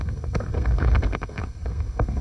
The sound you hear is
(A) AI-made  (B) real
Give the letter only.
A